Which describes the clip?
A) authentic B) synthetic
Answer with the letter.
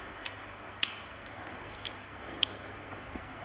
B